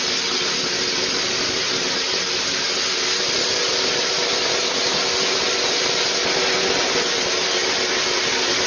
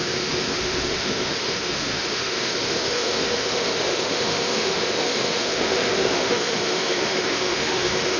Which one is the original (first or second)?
first